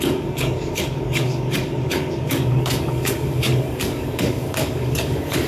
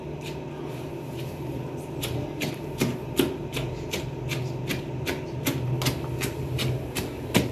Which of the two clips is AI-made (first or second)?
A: first